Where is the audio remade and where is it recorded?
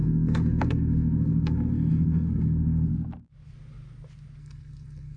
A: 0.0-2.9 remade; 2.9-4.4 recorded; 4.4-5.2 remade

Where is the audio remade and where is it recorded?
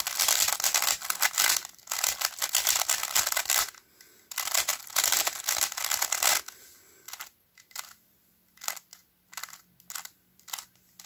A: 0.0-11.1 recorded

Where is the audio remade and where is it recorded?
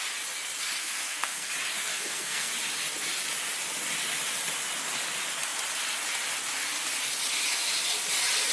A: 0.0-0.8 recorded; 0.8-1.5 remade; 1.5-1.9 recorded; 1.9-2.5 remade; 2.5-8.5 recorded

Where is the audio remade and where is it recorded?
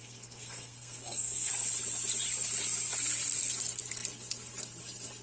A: 0.0-1.5 remade; 1.5-5.2 recorded